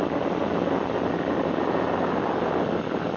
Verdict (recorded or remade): recorded